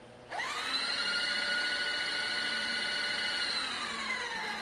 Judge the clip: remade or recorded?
remade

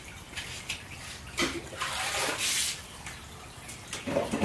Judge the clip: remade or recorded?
recorded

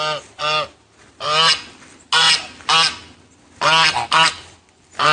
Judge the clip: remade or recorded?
recorded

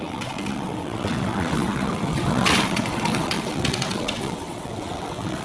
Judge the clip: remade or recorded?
remade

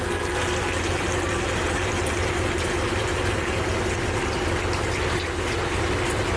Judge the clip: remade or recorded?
recorded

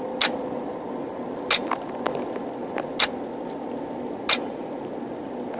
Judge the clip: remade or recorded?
recorded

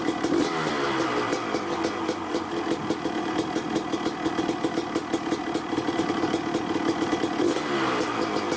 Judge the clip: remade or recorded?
recorded